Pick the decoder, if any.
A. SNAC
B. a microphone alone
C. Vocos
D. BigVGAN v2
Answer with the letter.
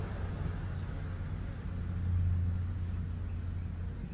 B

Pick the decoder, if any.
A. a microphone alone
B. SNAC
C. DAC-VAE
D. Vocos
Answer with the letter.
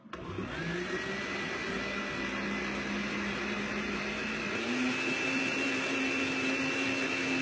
A